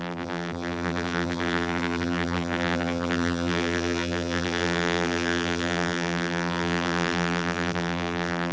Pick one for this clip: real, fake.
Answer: fake